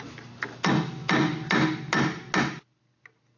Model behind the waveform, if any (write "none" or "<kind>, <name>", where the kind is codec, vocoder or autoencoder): none